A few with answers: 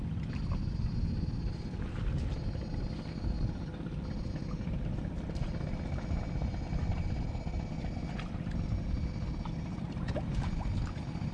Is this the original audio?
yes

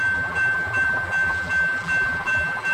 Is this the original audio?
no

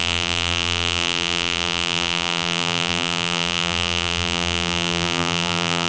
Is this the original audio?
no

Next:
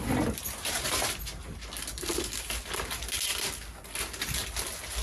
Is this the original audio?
yes